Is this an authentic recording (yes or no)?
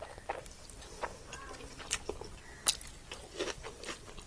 yes